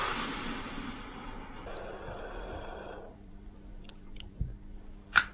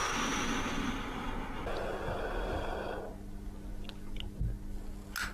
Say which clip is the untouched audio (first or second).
second